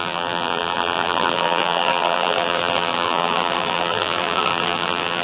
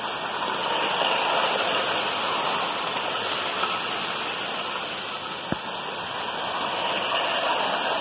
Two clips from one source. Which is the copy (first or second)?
first